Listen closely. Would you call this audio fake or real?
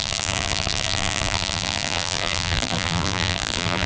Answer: fake